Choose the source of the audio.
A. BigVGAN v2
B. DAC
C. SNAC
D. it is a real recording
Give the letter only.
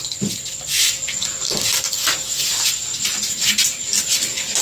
D